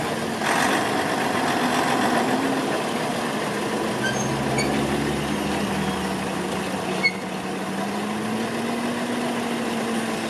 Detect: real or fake real